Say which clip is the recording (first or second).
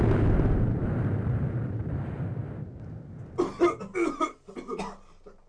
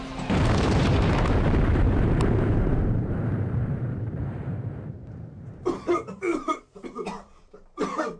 first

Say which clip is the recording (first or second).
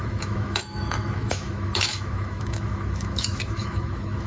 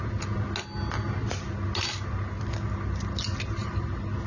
second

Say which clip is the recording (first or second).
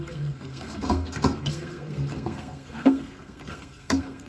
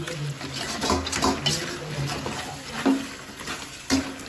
second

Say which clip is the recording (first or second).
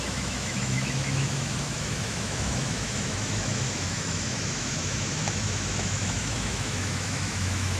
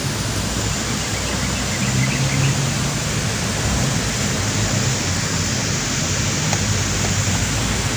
second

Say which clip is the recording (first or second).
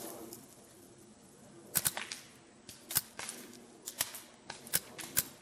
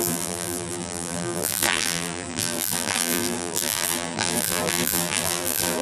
first